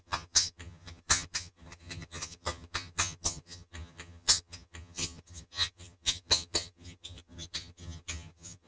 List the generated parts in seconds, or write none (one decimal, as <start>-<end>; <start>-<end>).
0.0-8.7